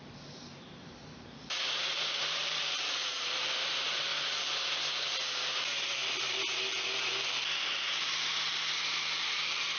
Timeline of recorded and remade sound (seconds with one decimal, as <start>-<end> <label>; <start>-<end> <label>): 0.0-4.1 remade; 4.1-8.0 recorded; 8.0-9.8 remade